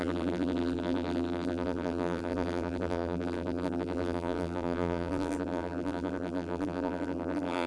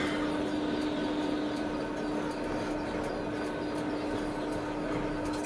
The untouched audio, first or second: second